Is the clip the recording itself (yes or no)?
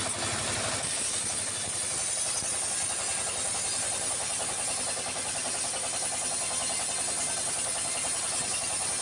yes